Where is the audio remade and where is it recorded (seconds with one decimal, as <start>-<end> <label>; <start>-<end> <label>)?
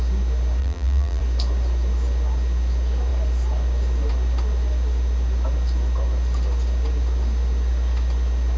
0.0-0.6 recorded; 0.6-1.2 remade; 1.2-8.6 recorded